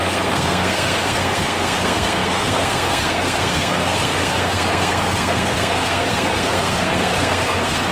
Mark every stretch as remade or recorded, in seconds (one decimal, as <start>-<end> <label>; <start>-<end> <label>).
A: 0.0-7.9 remade